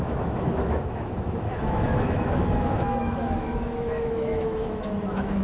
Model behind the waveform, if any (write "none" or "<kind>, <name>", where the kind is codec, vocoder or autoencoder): autoencoder, DAC-VAE